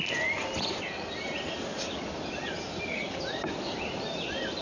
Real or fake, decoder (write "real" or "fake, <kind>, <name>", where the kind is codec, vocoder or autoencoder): real